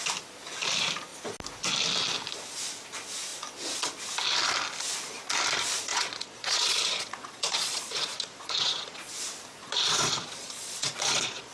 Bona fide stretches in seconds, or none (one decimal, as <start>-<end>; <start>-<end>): 0.0-5.9; 9.1-9.6